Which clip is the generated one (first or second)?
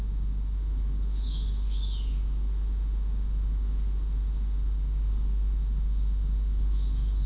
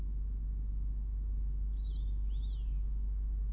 first